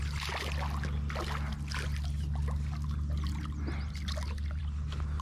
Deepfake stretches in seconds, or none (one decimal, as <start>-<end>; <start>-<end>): none